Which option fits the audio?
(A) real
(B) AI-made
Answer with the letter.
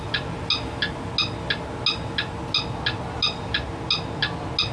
A